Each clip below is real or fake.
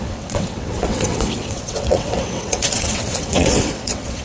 fake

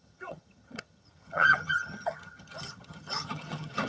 fake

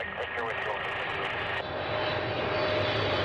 real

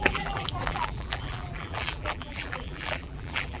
fake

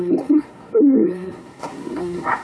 fake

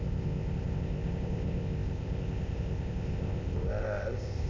fake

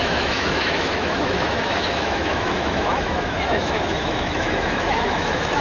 fake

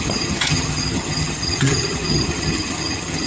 fake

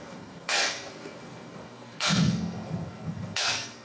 fake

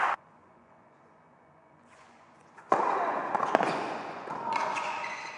fake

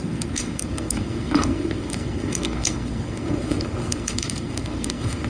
fake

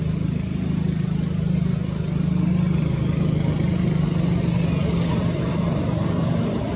real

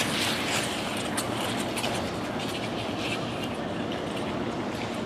real